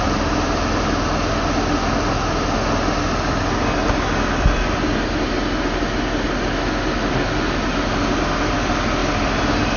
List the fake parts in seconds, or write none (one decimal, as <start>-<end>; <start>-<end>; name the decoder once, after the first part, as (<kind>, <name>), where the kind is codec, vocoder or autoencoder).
none